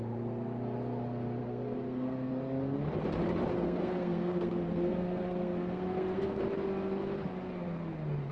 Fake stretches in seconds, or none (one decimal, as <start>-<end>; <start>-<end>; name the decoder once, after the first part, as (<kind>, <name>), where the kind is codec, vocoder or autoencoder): 1.4-2.3 (codec, SNAC); 3.5-6.4